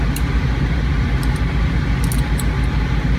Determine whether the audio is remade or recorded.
recorded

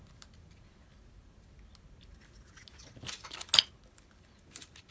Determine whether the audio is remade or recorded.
recorded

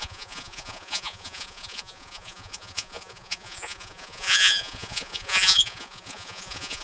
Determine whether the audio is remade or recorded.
remade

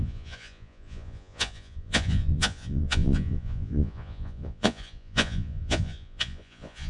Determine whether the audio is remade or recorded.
remade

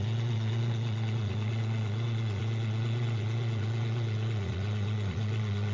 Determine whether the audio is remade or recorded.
remade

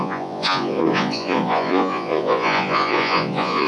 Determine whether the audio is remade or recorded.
remade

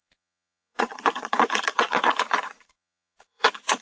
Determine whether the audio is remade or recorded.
remade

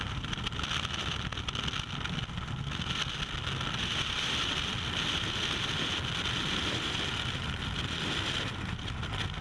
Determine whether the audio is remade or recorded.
recorded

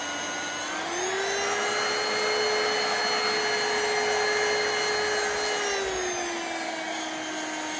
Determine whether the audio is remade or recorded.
recorded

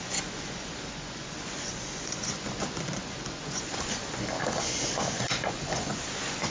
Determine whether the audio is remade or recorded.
remade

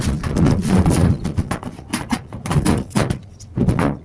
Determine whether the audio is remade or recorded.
remade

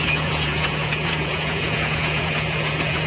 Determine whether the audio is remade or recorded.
remade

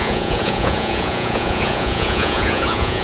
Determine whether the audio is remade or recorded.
remade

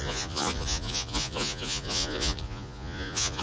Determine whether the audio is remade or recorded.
remade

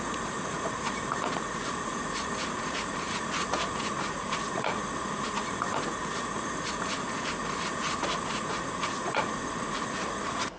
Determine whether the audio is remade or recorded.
remade